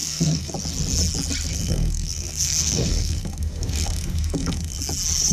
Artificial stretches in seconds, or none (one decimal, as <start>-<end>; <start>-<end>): 0.0-0.5; 1.5-4.7